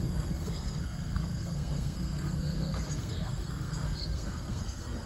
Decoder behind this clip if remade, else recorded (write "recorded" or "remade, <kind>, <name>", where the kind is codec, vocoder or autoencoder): remade, codec, SNAC